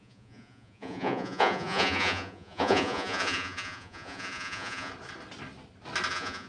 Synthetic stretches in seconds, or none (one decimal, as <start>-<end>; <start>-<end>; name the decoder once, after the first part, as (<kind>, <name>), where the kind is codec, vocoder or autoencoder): 0.0-4.9 (vocoder, Vocos); 6.1-6.5

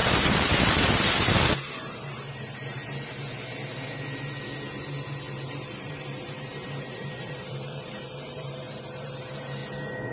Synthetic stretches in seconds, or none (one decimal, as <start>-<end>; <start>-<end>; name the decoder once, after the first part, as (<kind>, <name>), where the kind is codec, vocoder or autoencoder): 0.0-2.8 (vocoder, BigVGAN v2); 5.8-9.6

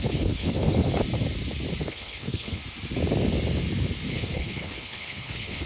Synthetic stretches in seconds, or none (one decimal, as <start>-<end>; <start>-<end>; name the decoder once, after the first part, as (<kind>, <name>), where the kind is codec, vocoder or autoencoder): 0.0-0.9 (codec, HILCodec); 1.8-2.6; 4.1-5.7

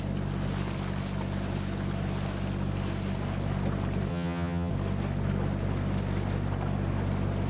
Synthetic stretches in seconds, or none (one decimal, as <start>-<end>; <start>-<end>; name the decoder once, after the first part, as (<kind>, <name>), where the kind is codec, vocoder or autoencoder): 4.1-4.7 (vocoder, HiFi-GAN)

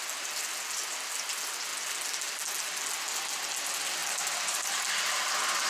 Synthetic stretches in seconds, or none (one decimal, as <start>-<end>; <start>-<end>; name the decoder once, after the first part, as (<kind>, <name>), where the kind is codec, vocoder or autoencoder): 4.0-5.0 (vocoder, BigVGAN v2)